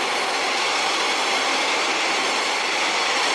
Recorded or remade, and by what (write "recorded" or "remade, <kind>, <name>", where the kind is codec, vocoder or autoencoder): recorded